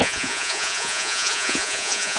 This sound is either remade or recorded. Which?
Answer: remade